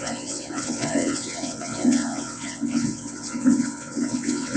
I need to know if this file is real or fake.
fake